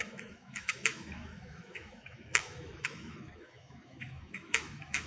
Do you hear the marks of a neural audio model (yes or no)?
yes